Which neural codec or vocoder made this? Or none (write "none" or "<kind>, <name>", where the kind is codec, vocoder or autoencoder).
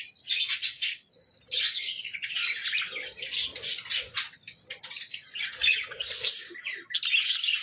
none